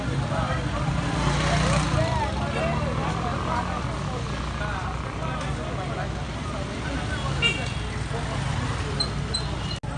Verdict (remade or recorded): recorded